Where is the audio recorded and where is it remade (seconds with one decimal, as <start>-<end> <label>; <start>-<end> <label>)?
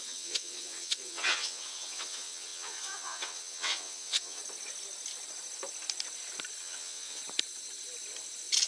0.0-4.4 remade; 4.4-6.6 recorded; 6.6-7.2 remade; 7.2-8.7 recorded